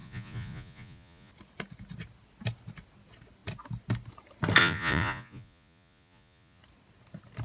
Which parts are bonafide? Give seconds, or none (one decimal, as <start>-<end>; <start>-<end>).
1.3-4.6; 6.6-7.4